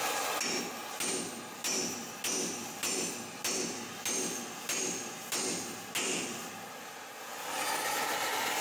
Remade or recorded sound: recorded